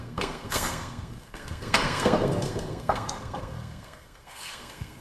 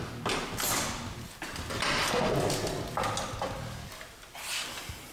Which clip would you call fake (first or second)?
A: first